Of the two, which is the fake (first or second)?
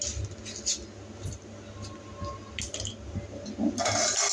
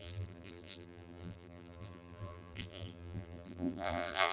second